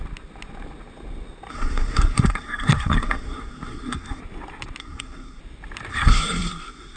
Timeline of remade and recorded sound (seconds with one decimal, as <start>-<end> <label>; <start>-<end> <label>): 0.0-1.5 recorded; 1.5-4.2 remade; 4.2-4.8 recorded; 4.8-5.4 remade; 5.4-5.9 recorded; 5.9-7.0 remade